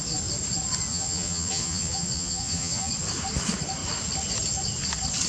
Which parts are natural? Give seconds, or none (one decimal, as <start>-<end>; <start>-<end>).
0.0-0.9; 2.9-5.3

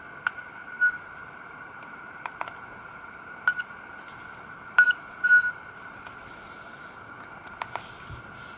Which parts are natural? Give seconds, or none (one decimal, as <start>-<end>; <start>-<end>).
0.0-8.6

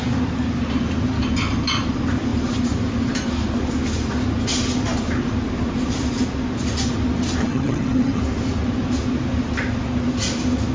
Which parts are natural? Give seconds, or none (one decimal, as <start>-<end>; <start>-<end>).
0.0-7.4; 8.2-10.7

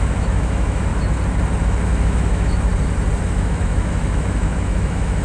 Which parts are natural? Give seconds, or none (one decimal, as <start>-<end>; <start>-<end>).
0.9-1.6; 2.7-3.3

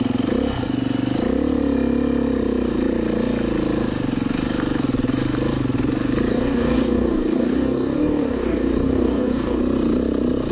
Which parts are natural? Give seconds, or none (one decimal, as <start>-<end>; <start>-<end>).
0.0-6.3; 9.6-10.5

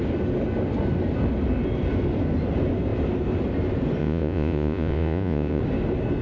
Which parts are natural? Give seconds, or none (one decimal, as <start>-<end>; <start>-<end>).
0.0-4.0; 5.6-6.2